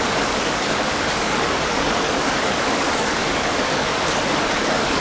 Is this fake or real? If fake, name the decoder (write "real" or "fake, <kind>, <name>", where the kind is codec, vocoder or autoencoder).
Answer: fake, codec, DAC